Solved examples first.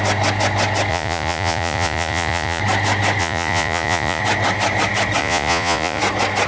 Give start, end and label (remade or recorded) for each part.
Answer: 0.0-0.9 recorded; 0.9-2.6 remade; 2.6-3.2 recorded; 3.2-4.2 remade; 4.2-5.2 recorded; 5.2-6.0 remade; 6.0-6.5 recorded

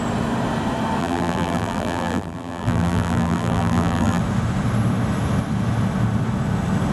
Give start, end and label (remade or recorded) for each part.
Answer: 0.0-1.0 recorded; 1.0-4.2 remade; 4.2-6.9 recorded

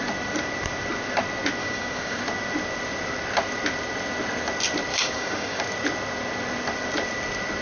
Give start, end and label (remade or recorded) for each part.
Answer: 0.0-1.6 recorded; 1.6-2.2 remade; 2.2-4.9 recorded; 4.9-5.6 remade; 5.6-7.6 recorded